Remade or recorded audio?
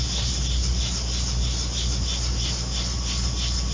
recorded